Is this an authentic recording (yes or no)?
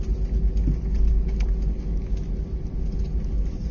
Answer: yes